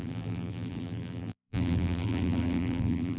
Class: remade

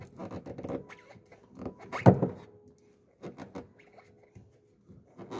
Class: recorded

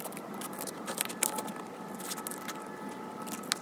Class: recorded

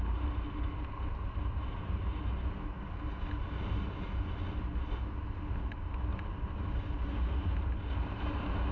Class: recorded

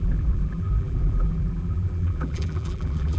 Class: remade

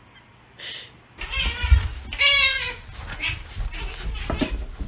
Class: recorded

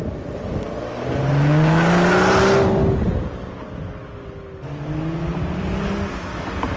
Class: recorded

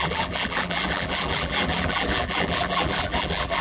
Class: remade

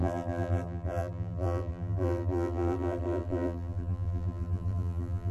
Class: remade